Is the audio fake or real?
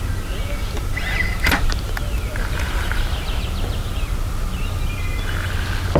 real